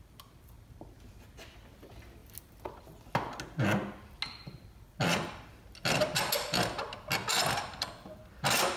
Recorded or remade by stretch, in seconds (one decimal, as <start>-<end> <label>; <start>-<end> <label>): 0.0-8.8 recorded